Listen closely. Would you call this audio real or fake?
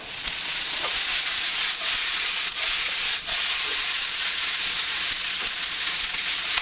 fake